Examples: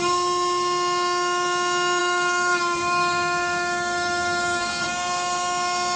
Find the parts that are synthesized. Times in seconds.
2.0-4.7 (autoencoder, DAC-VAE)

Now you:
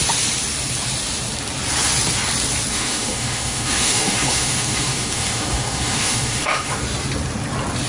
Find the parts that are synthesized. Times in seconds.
2.7-6.8 (autoencoder, DAC-VAE)

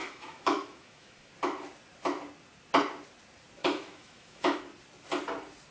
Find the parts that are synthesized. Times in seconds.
0.0-1.3 (autoencoder, DAC-VAE); 3.6-4.6